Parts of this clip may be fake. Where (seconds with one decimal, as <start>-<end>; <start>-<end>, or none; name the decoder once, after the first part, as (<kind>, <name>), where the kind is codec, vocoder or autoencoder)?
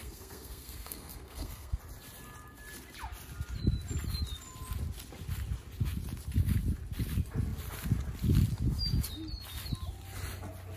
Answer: 0.0-1.8 (codec, SNAC)